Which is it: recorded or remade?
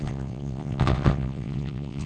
remade